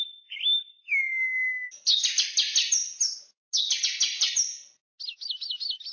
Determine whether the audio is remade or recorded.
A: recorded